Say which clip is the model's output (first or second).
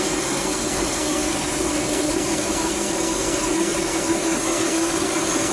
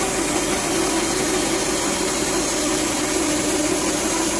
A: first